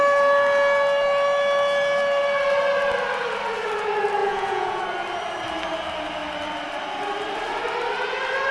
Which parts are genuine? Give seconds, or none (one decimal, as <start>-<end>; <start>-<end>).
0.0-4.2; 4.8-8.5